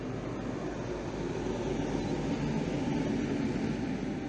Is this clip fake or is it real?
real